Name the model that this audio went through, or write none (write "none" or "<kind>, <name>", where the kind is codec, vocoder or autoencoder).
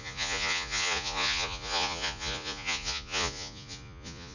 vocoder, Vocos